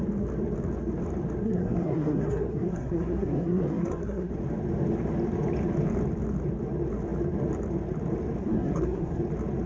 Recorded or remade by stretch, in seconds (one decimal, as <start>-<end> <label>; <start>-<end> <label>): 0.0-1.4 recorded; 1.4-4.3 remade; 4.3-8.4 recorded; 8.4-9.2 remade; 9.2-9.7 recorded